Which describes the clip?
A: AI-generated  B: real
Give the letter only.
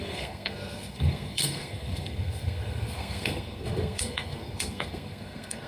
A